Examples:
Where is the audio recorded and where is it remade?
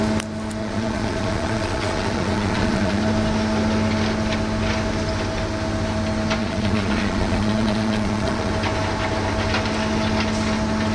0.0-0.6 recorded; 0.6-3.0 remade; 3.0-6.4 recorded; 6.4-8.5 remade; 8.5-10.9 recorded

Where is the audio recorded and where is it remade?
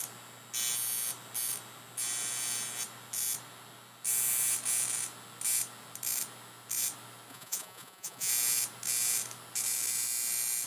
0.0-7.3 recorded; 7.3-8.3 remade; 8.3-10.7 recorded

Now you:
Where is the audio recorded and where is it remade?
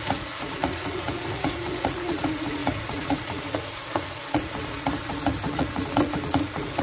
0.0-6.8 remade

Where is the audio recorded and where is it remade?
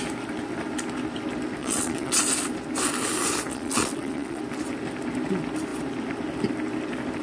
0.0-1.6 recorded; 1.6-2.2 remade; 2.2-3.5 recorded; 3.5-4.4 remade; 4.4-7.2 recorded